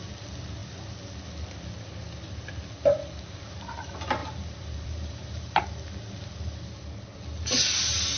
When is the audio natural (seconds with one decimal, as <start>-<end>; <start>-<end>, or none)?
0.0-4.2; 5.6-8.2